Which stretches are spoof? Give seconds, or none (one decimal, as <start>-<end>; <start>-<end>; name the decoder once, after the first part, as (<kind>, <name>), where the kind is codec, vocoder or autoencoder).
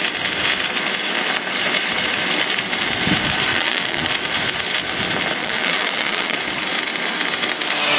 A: 3.5-4.1 (vocoder, Vocos); 5.4-6.4